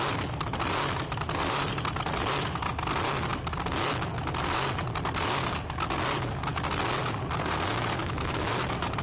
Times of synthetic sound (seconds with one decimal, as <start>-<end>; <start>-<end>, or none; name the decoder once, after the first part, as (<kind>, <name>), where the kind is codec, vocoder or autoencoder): 8.0-8.5 (autoencoder, DAC-VAE)